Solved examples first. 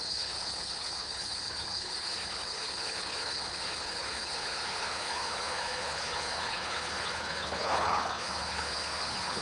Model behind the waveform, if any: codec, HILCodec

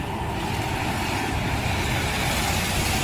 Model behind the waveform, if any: none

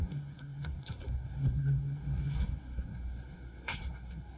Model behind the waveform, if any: codec, SNAC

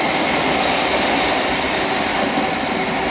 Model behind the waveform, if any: none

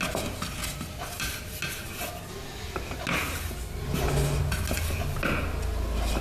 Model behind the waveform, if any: none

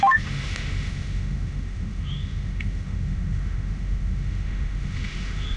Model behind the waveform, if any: autoencoder, DAC-VAE